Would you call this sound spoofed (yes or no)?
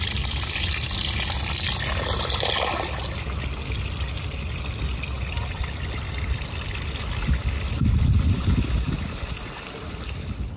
no